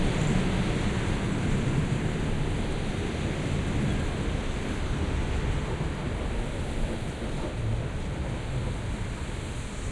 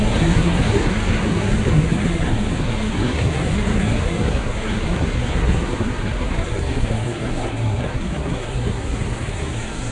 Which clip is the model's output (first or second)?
second